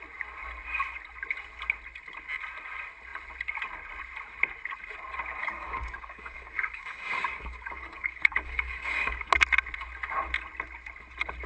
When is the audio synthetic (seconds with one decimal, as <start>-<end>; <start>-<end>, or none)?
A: 5.4-9.3